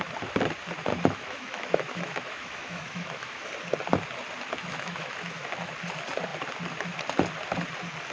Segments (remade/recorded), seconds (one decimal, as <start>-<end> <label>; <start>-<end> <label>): 0.0-0.9 recorded; 0.9-3.5 remade; 3.5-4.6 recorded; 4.6-5.7 remade; 5.7-8.1 recorded